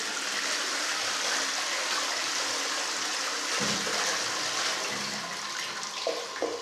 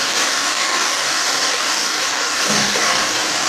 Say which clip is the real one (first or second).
first